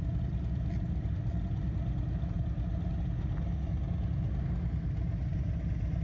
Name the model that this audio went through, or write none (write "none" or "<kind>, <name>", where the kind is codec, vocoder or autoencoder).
none